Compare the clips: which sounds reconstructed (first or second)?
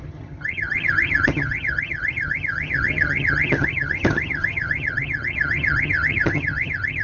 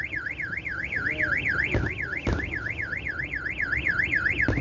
first